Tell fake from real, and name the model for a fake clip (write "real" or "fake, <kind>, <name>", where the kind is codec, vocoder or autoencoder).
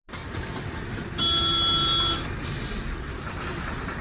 real